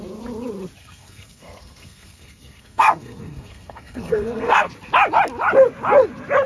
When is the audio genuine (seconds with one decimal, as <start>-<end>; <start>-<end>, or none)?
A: 0.0-0.8; 4.7-6.5